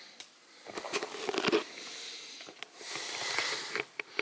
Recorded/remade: recorded